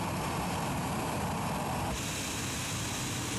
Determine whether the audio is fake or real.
real